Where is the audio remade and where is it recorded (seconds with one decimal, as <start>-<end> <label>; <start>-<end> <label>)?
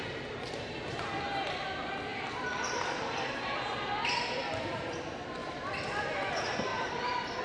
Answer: 0.0-2.1 recorded; 2.1-4.7 remade; 4.7-5.4 recorded; 5.4-6.0 remade; 6.0-6.7 recorded; 6.7-7.4 remade